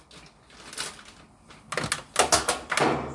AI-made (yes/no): no